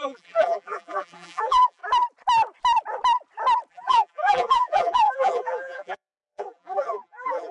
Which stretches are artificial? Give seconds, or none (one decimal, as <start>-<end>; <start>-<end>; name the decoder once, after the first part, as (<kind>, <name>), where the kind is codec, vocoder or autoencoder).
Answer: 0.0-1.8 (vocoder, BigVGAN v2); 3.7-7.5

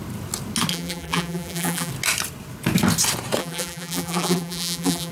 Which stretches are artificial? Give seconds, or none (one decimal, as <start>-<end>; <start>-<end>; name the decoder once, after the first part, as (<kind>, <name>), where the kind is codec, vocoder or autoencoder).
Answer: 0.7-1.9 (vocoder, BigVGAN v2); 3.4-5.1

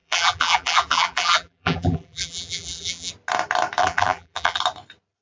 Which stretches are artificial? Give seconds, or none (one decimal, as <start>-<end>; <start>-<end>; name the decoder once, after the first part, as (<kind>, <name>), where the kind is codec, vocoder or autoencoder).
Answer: 0.0-3.1 (vocoder, BigVGAN v2); 3.8-4.6

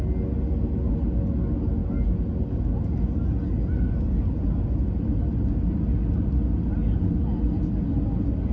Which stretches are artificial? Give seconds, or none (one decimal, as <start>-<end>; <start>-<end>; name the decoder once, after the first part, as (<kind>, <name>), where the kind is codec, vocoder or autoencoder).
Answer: none

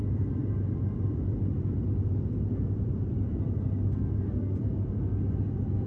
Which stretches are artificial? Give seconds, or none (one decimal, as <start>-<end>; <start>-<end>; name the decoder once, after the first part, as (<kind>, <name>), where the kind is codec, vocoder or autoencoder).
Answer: 0.0-5.9 (vocoder, BigVGAN v2)

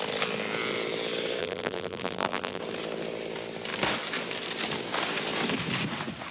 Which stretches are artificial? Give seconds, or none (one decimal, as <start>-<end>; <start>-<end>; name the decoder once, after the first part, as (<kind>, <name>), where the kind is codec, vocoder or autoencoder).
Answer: 1.4-2.6 (vocoder, BigVGAN v2)

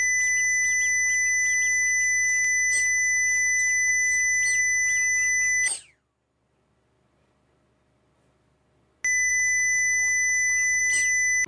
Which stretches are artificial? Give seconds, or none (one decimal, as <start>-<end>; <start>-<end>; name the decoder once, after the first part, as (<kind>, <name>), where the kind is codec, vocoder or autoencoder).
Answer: none

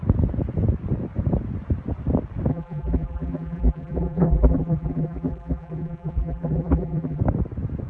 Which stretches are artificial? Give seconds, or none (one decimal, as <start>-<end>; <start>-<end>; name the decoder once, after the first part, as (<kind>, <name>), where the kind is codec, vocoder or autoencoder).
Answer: 2.5-7.2 (vocoder, BigVGAN v2)